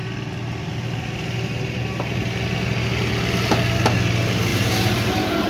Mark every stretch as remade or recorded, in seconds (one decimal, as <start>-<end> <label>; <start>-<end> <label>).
0.0-4.5 recorded; 4.5-5.5 remade